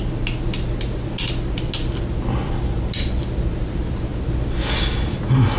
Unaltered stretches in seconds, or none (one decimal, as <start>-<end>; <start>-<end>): 0.0-5.6